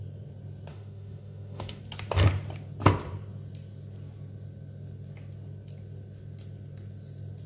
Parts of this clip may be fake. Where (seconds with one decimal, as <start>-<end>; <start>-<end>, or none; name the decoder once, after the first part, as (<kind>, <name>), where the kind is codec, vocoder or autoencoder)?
0.7-1.8 (autoencoder, DAC-VAE)